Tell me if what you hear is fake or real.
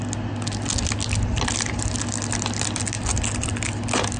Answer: real